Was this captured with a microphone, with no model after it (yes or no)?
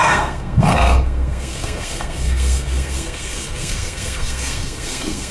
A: no